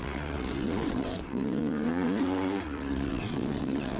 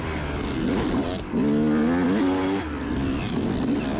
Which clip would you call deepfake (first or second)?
first